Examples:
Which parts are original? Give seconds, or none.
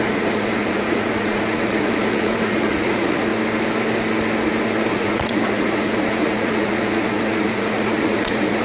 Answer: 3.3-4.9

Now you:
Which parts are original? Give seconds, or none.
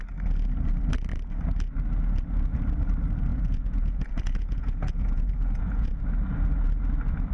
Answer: 0.0-3.3; 6.0-7.3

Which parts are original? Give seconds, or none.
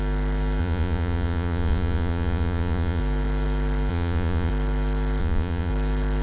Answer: 0.0-0.6; 3.0-3.9; 4.5-5.2; 5.7-6.2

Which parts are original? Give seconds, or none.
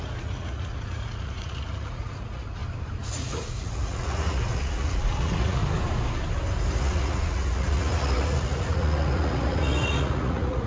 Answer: 2.6-3.1; 5.6-6.8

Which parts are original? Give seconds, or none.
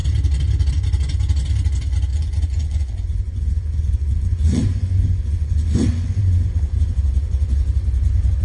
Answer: 0.0-2.1; 6.2-8.4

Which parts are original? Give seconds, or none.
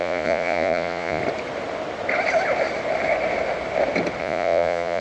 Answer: 1.2-4.2